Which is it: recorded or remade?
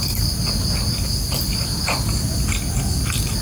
recorded